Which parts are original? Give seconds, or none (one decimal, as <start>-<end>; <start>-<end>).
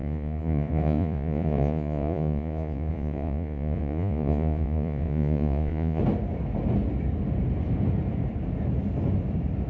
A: 6.0-9.7